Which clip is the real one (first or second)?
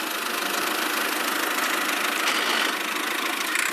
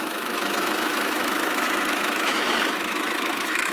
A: first